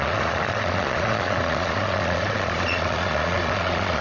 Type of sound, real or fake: fake